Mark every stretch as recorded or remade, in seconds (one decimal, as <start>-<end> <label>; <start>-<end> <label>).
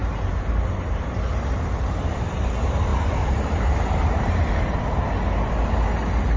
0.0-2.3 remade; 2.3-2.9 recorded; 2.9-4.8 remade; 4.8-6.4 recorded